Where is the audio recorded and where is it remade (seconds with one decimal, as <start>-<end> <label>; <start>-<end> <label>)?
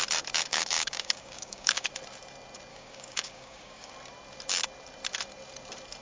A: 0.0-0.5 recorded; 0.5-1.9 remade; 1.9-2.7 recorded; 2.7-3.9 remade; 3.9-6.0 recorded